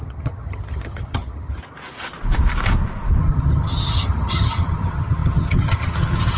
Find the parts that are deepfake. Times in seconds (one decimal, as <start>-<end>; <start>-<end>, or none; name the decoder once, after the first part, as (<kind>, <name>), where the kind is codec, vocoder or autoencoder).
0.0-1.6 (vocoder, HiFi-GAN); 3.2-6.4